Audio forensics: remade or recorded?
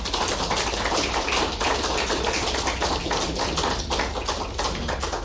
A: recorded